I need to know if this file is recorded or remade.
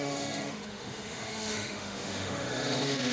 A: remade